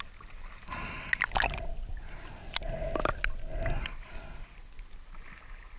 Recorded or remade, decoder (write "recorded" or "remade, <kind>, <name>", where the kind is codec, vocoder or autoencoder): recorded